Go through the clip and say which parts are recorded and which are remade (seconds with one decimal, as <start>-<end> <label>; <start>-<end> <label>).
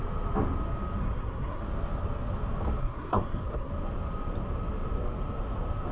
0.0-1.0 recorded; 1.0-1.6 remade; 1.6-2.8 recorded; 2.8-3.7 remade; 3.7-5.9 recorded